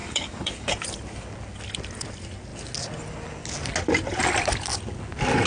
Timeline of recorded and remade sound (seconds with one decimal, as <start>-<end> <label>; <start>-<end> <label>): 0.0-0.7 remade; 0.7-5.5 recorded